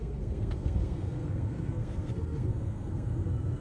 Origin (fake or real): fake